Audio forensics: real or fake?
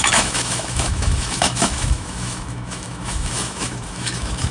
fake